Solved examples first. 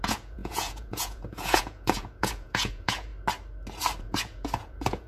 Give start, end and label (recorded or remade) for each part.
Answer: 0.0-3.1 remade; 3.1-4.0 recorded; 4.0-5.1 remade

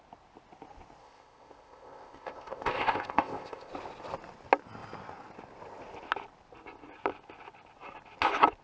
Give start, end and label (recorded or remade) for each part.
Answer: 0.0-1.0 recorded; 1.0-3.7 remade; 3.7-8.6 recorded

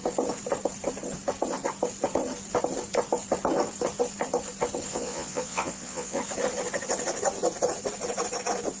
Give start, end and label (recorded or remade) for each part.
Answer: 0.0-4.9 recorded; 4.9-6.2 remade; 6.2-8.8 recorded

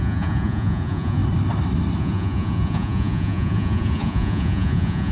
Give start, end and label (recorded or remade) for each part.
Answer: 0.0-1.2 remade; 1.2-2.0 recorded; 2.0-5.1 remade

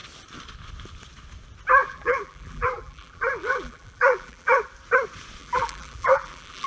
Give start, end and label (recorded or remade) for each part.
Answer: 0.0-1.8 recorded; 1.8-4.7 remade; 4.7-5.4 recorded; 5.4-6.7 remade

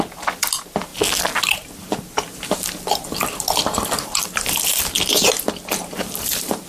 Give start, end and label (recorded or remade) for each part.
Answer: 0.0-6.7 recorded